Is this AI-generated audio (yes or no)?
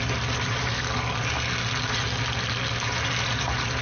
no